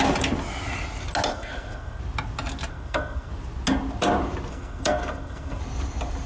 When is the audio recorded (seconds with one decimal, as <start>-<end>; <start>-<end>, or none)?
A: 0.0-1.3; 2.0-2.7; 3.3-4.5; 5.6-6.3